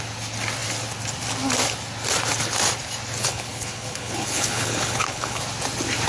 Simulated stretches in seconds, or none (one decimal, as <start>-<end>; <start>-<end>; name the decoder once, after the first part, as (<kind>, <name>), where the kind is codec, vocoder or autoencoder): 3.2-5.4 (codec, HILCodec)